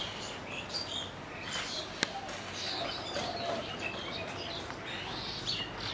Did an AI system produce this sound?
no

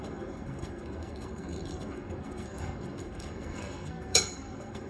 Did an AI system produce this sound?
yes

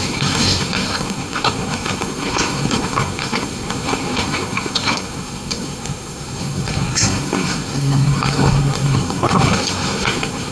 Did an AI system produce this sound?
yes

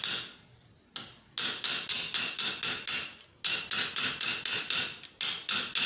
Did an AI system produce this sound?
no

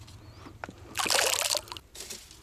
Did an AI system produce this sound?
no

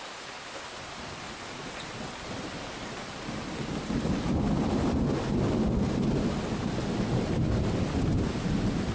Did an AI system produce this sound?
no